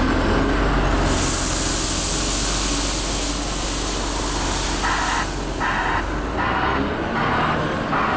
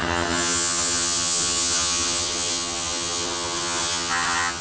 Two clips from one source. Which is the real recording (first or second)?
first